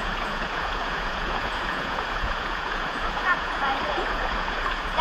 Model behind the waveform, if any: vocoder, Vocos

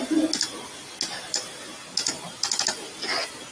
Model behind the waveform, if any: none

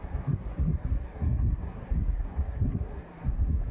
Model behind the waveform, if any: codec, SNAC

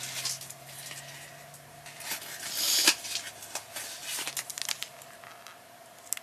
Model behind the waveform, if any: none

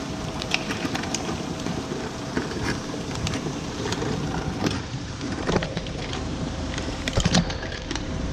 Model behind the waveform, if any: vocoder, BigVGAN v2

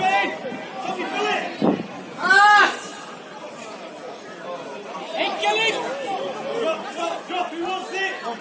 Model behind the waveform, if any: none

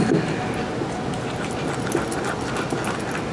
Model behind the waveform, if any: none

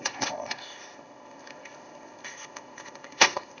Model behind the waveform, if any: codec, ZipCodec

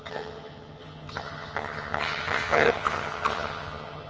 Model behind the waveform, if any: vocoder, HiFi-GAN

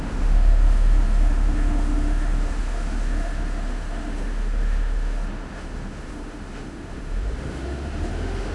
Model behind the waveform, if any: autoencoder, DAC-VAE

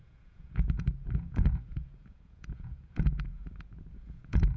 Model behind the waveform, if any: vocoder, Vocos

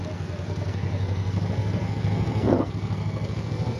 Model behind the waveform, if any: codec, SNAC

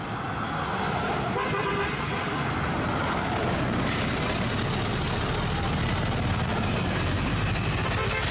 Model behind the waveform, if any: none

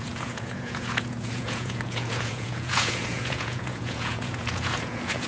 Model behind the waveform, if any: vocoder, Vocos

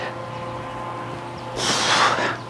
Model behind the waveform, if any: none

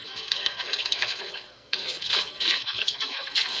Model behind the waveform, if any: codec, SNAC